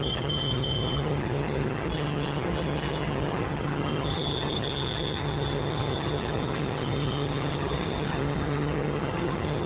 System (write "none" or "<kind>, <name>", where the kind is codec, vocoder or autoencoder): vocoder, HiFi-GAN